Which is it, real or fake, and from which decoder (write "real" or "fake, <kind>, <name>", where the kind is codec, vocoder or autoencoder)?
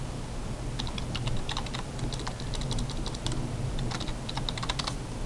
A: real